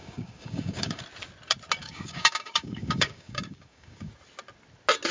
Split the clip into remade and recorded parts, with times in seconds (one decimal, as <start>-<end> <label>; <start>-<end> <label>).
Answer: 0.0-1.0 remade; 1.0-1.8 recorded; 1.8-4.1 remade; 4.1-5.1 recorded